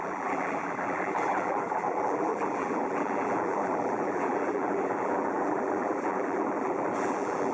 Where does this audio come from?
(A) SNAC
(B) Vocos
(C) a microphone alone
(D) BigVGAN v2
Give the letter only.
D